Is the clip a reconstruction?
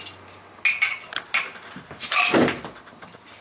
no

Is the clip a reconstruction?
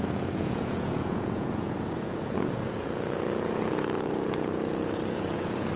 yes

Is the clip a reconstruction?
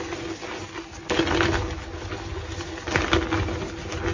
no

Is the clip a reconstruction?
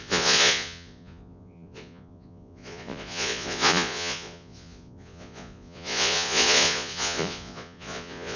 yes